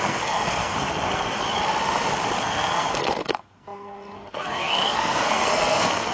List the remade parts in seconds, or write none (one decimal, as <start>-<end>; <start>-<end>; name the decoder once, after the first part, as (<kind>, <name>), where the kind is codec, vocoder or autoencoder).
0.0-1.4 (codec, SNAC); 2.4-6.1